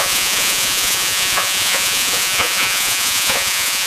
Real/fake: fake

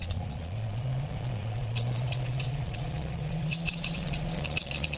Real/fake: fake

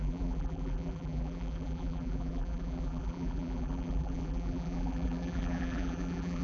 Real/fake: fake